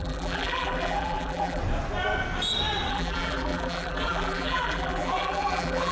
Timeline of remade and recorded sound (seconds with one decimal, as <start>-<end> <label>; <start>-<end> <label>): 0.0-1.6 remade; 1.6-2.9 recorded; 2.9-5.9 remade